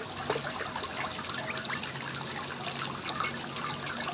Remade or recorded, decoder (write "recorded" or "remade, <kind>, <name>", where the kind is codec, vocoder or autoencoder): recorded